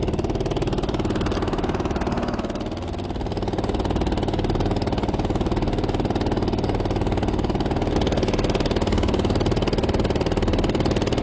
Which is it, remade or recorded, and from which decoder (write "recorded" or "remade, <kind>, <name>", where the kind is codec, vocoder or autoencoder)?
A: recorded